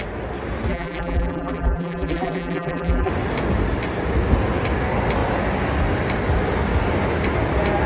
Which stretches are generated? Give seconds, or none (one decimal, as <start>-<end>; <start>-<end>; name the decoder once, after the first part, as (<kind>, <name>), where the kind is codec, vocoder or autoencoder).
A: 0.7-3.1 (vocoder, BigVGAN v2)